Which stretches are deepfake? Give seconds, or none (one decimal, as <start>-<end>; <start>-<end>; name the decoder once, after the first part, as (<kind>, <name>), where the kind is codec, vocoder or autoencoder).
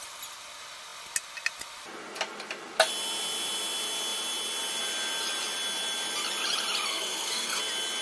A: 6.9-7.6 (codec, SNAC)